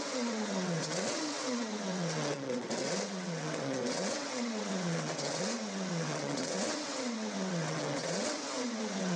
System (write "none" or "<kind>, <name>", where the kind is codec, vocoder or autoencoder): vocoder, WaveNeXt